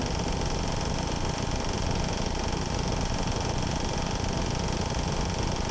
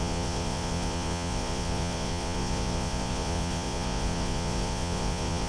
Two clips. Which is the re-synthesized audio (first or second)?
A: second